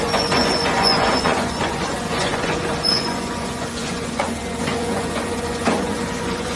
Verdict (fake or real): fake